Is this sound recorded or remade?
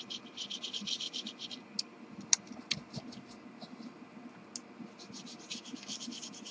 recorded